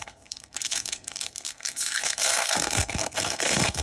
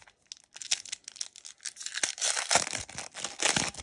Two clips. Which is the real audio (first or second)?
second